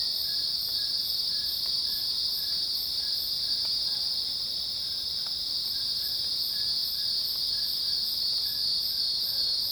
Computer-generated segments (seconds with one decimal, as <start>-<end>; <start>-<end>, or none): none